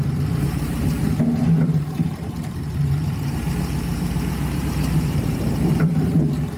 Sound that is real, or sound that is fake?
fake